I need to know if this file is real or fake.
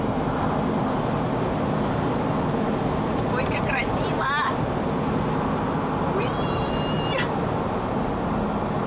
real